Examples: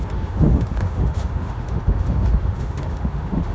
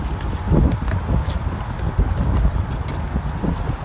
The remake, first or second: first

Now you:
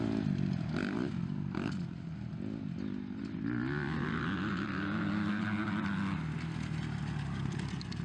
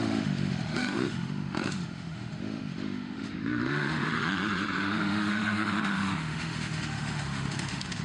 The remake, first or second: second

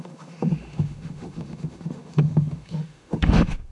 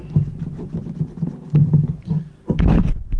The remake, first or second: first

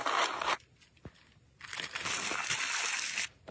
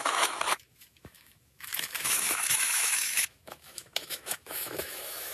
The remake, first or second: second